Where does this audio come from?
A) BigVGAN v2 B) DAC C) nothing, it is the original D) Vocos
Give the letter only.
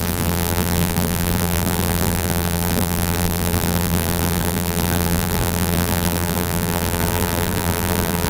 A